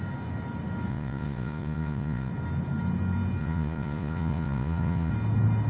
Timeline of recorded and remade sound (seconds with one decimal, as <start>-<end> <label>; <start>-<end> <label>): 0.0-0.9 recorded; 0.9-2.3 remade; 2.3-3.4 recorded; 3.4-5.1 remade; 5.1-5.7 recorded